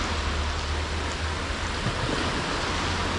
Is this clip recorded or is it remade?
recorded